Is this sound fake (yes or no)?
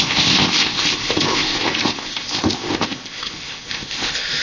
yes